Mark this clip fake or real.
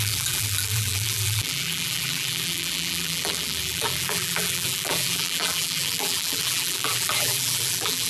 fake